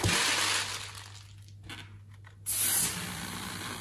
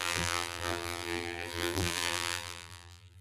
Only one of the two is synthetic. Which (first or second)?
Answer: second